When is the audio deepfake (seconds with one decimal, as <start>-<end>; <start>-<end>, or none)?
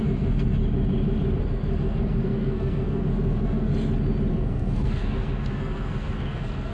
0.0-0.6; 1.4-3.7; 4.3-6.7